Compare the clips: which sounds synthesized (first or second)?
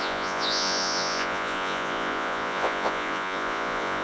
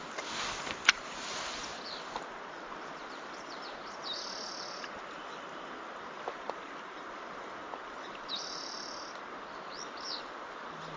first